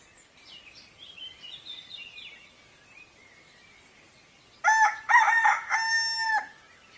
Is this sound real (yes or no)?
yes